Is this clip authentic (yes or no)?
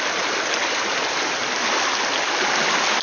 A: yes